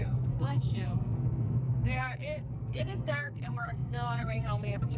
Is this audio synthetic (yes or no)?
yes